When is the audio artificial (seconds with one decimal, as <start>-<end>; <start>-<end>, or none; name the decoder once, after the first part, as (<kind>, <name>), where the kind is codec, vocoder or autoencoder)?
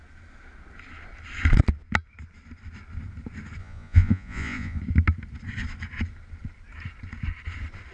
3.6-4.8 (vocoder, Vocos)